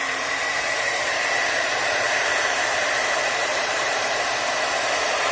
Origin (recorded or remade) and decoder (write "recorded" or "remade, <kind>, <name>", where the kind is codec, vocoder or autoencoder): remade, vocoder, BigVGAN v2